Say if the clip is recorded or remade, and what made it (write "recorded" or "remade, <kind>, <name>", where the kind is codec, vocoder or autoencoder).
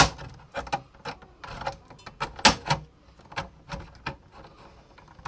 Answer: recorded